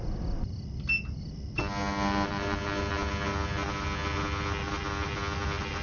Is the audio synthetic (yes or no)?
no